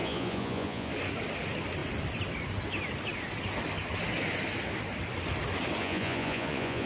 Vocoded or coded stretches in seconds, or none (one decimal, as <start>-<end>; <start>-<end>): 0.0-0.9; 5.8-6.9